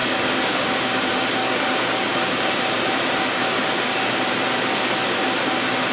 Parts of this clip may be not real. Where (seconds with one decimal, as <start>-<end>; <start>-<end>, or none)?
0.0-0.7; 1.4-2.6; 3.4-4.1